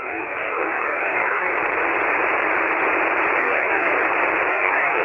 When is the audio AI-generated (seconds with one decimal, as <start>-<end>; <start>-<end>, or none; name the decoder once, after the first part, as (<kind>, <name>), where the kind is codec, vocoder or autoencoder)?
0.0-1.5 (codec, DAC); 3.4-3.9; 4.5-5.0